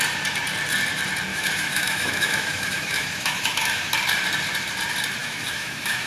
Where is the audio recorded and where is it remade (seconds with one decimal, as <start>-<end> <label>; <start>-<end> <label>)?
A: 0.0-1.3 recorded; 1.3-3.9 remade; 3.9-5.2 recorded; 5.2-6.1 remade